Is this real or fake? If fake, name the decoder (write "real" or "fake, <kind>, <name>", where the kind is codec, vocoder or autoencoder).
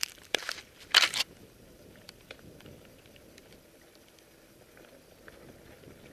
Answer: fake, vocoder, BigVGAN v2